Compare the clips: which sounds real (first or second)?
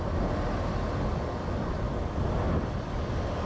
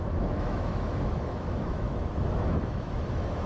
first